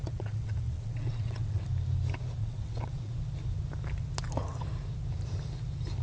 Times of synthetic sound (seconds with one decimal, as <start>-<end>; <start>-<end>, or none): 0.0-1.6; 2.4-3.1